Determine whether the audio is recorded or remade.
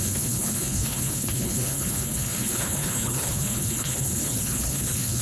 remade